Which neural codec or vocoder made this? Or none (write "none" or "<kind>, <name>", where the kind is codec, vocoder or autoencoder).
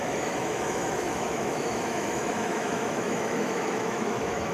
autoencoder, DAC-VAE